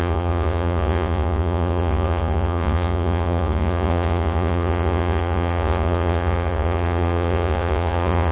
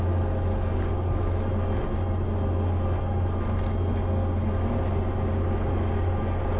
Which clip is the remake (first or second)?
first